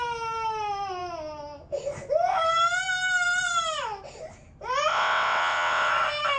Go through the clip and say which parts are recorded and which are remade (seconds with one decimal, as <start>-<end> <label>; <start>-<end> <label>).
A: 0.0-4.9 recorded; 4.9-5.9 remade; 5.9-6.4 recorded